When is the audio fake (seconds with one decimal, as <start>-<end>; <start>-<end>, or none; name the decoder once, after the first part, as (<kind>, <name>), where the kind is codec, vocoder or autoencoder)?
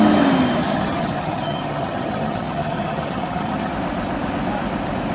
0.6-3.7 (vocoder, HiFi-GAN)